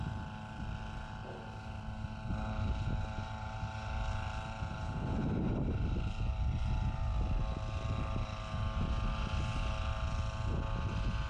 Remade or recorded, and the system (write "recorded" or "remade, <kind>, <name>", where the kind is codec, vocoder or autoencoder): recorded